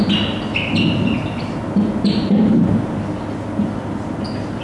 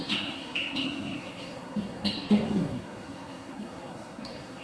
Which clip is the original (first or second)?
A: first